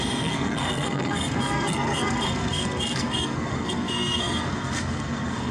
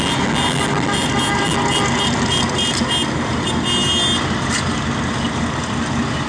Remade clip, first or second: first